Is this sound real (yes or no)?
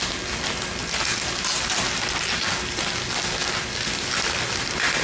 yes